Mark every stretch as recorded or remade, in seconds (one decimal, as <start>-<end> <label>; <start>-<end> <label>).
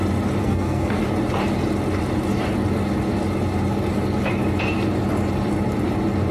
0.0-0.4 recorded; 0.4-1.0 remade; 1.0-6.3 recorded